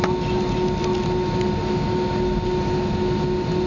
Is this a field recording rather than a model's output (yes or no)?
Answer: yes